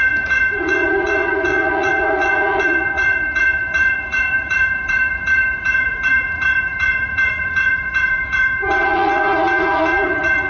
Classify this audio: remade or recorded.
remade